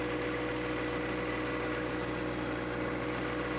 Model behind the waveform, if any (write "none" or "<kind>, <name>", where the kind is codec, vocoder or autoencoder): none